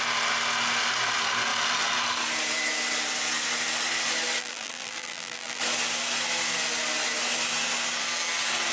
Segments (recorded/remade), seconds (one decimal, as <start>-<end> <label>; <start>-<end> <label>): 0.0-4.4 recorded; 4.4-5.6 remade; 5.6-8.7 recorded